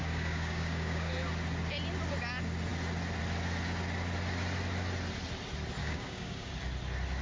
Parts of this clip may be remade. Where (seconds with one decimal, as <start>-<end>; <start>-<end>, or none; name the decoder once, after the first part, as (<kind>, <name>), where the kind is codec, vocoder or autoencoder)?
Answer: 0.0-1.1 (codec, DAC); 5.8-6.5